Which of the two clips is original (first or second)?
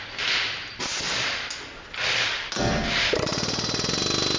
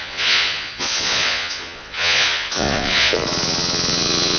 first